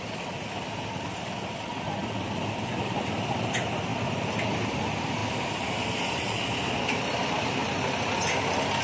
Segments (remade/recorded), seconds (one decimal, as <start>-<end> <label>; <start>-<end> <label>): 0.0-3.9 recorded; 3.9-4.5 remade; 4.5-8.8 recorded